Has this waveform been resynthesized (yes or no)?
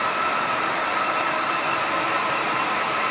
no